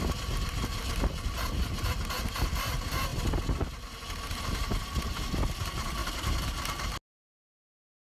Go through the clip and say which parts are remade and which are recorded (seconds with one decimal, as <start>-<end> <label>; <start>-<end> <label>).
0.0-8.1 recorded